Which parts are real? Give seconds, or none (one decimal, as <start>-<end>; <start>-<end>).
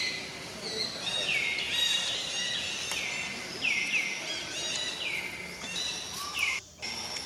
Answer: 0.0-1.3; 2.1-7.3